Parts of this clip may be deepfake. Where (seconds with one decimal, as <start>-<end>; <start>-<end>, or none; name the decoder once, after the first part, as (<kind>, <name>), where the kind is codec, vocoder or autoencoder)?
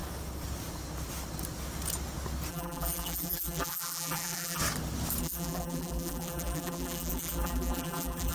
2.5-4.6 (vocoder, BigVGAN v2); 5.2-8.3